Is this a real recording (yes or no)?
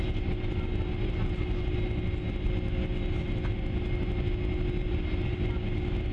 yes